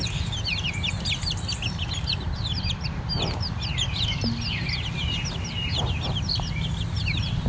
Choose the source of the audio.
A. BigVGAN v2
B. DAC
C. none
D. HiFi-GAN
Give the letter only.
C